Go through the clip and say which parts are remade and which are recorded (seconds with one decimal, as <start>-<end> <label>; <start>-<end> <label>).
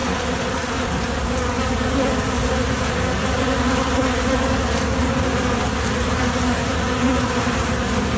0.0-8.2 recorded